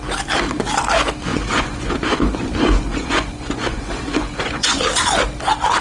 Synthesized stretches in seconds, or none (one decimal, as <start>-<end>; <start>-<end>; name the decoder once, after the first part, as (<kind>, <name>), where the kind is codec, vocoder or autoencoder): 1.3-4.8 (vocoder, Vocos)